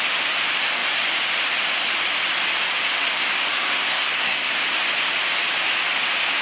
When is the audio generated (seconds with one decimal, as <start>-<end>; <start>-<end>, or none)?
3.5-4.5